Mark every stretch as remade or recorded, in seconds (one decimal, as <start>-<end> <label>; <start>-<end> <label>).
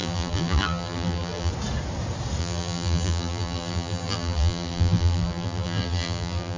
0.0-1.5 remade; 1.5-2.4 recorded; 2.4-6.6 remade